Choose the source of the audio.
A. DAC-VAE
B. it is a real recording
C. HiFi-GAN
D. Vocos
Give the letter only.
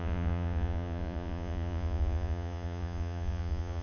D